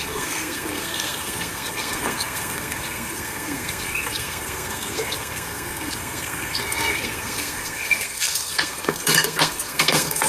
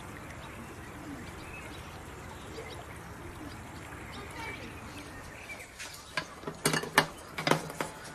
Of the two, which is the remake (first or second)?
first